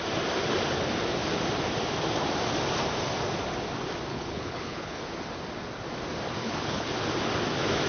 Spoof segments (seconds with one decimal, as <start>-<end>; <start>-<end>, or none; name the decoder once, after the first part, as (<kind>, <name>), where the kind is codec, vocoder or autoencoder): 4.1-5.0 (codec, HILCodec); 6.4-6.9